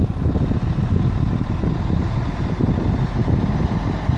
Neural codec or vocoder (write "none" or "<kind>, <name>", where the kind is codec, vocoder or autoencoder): none